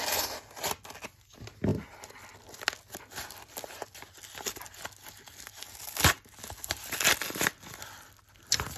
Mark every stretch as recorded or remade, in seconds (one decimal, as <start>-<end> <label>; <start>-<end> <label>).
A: 0.0-8.8 recorded